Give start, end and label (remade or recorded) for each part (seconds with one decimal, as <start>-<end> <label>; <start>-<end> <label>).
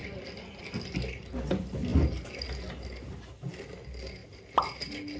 0.0-5.2 recorded